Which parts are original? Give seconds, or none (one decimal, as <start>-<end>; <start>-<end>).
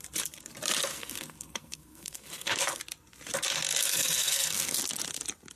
0.0-0.9; 2.8-3.8; 4.8-5.6